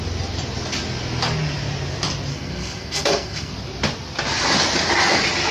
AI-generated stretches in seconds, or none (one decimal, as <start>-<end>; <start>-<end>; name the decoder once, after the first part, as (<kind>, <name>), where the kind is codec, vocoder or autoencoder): 2.3-3.5 (codec, SNAC)